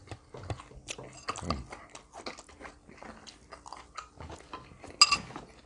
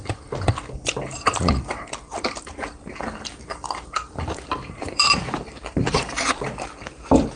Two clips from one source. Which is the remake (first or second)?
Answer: second